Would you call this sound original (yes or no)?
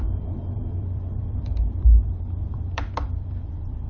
no